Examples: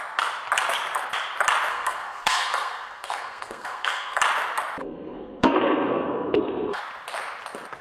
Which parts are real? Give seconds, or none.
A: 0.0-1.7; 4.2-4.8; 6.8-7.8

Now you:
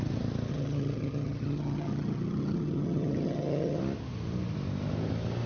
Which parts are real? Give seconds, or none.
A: 0.0-0.5; 3.8-5.5

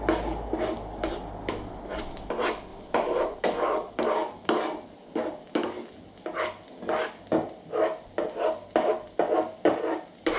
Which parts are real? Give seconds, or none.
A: 0.0-2.7; 3.4-10.4